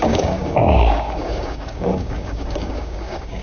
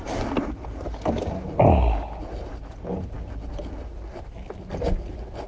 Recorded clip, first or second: second